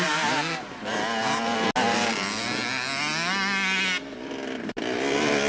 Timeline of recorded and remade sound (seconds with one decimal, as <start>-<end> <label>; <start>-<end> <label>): 0.0-5.5 recorded